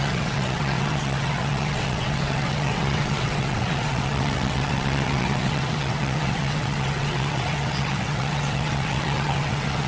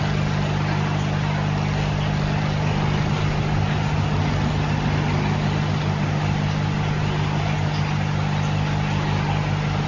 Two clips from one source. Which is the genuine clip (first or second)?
second